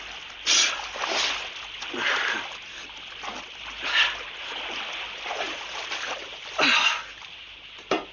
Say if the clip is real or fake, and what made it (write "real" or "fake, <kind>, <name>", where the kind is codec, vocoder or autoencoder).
real